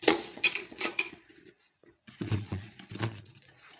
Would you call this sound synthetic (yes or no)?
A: yes